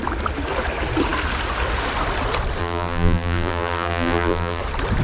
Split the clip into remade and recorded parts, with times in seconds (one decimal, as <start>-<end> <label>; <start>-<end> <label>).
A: 0.0-2.6 recorded; 2.6-4.6 remade; 4.6-5.0 recorded